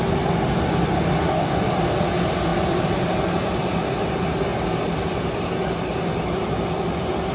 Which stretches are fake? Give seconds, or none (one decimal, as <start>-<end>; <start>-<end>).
1.2-1.7